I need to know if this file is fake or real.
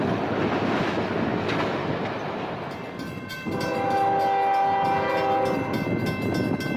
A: real